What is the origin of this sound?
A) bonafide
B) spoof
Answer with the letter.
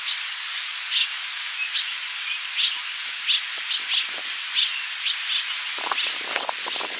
A